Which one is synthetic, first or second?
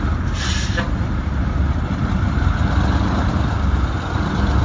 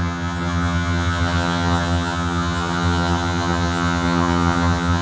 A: second